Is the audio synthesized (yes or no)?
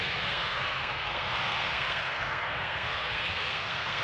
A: yes